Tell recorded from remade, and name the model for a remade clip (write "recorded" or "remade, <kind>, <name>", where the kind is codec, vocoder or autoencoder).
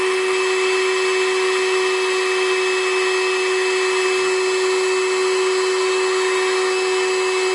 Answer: recorded